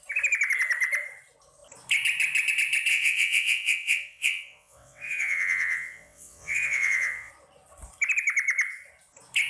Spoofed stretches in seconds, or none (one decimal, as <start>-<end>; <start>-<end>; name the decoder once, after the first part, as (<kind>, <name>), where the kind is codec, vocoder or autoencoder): 2.9-7.3 (vocoder, WaveNeXt)